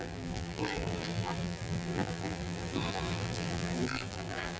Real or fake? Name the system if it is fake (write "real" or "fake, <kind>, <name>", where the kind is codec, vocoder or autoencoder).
fake, vocoder, BigVGAN v2